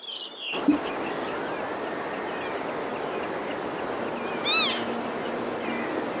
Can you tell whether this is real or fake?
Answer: real